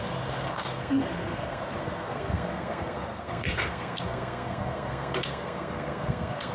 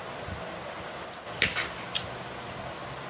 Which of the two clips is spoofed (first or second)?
first